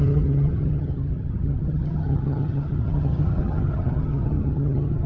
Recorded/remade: remade